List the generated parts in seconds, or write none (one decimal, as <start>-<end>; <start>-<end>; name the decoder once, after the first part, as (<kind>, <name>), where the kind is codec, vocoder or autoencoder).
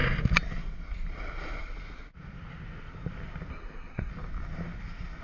3.5-4.1 (codec, SNAC)